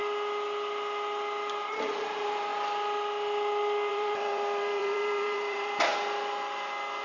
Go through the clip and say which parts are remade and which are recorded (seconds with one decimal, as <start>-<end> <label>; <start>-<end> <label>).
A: 0.0-2.0 recorded; 2.0-2.5 remade; 2.5-3.9 recorded; 3.9-5.9 remade; 5.9-7.0 recorded